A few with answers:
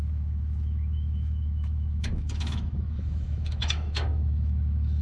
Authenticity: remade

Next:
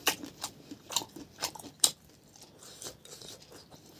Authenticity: remade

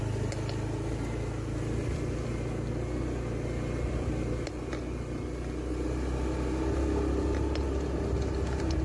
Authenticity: recorded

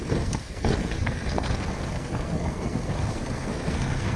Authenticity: remade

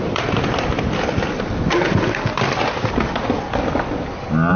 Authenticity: recorded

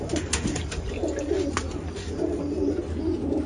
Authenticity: recorded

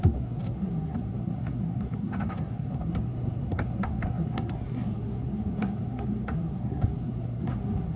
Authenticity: remade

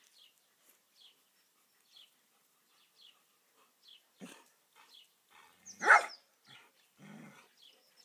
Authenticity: recorded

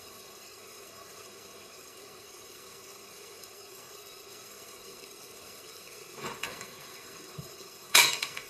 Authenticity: remade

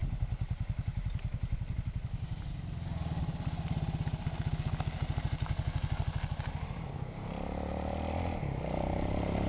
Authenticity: recorded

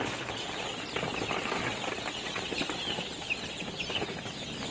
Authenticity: recorded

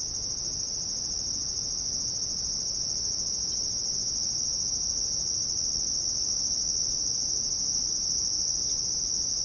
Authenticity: recorded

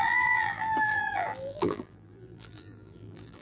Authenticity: remade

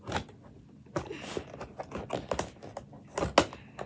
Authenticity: recorded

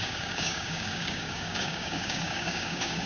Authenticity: remade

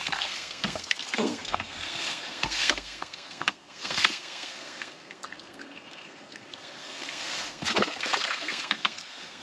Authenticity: remade